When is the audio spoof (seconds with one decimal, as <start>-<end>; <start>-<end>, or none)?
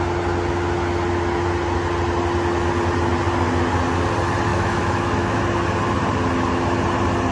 4.5-5.4